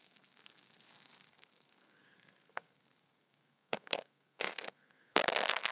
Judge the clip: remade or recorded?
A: remade